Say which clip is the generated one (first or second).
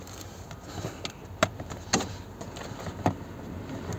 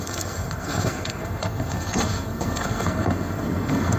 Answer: second